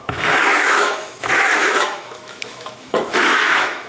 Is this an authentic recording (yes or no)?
no